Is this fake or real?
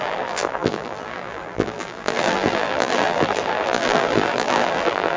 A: fake